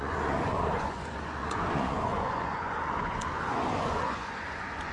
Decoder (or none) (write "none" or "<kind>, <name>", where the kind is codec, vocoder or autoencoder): vocoder, Vocos